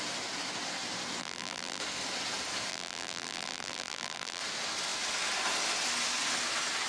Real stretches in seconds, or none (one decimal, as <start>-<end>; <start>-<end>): 0.0-1.2; 1.8-2.7; 4.4-6.9